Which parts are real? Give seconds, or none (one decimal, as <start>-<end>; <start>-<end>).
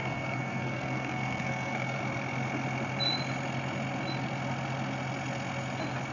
2.0-6.1